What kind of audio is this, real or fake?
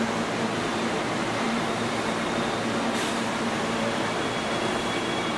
fake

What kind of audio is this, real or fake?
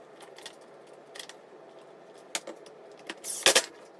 real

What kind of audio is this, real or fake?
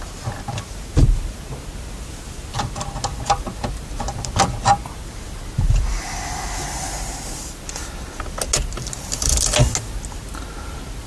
real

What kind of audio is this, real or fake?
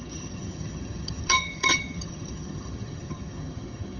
fake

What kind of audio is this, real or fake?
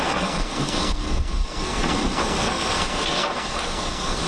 fake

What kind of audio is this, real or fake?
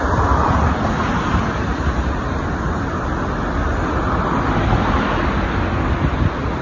real